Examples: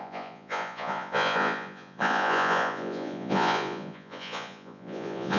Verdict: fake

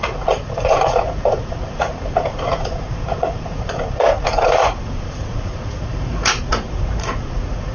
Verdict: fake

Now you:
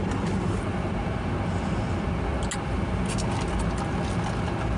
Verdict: real